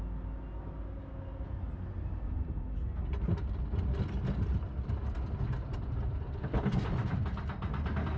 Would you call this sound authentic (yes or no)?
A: yes